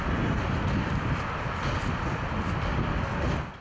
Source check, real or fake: real